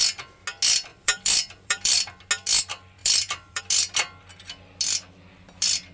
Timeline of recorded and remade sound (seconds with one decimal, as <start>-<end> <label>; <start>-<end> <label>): 0.0-0.9 recorded; 0.9-2.2 remade; 2.2-3.0 recorded; 3.0-3.6 remade; 3.6-5.9 recorded